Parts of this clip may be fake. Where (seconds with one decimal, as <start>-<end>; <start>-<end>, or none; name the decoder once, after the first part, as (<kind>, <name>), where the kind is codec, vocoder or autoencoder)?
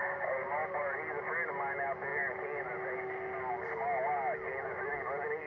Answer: none